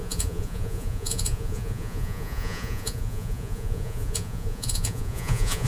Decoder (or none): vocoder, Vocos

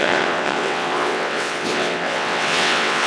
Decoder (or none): vocoder, WaveNeXt